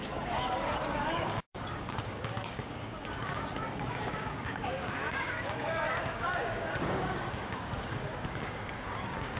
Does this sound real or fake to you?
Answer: fake